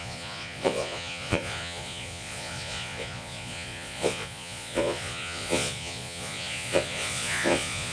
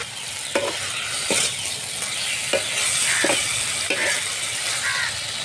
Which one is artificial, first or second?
first